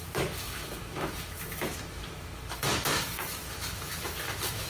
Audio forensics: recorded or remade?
remade